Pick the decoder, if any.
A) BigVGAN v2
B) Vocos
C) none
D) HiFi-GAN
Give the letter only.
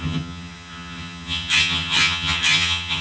D